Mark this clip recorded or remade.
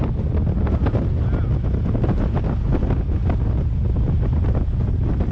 recorded